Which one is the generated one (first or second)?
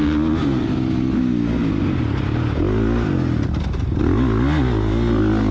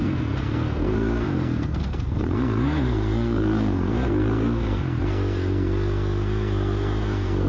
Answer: second